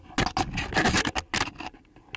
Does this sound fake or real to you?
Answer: real